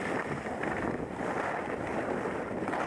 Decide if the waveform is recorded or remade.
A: recorded